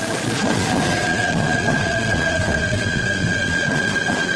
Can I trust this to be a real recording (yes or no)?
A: no